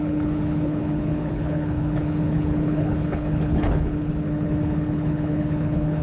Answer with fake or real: fake